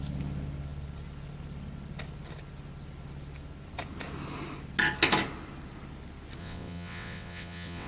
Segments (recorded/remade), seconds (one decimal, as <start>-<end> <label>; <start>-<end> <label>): 0.0-6.4 recorded; 6.4-7.9 remade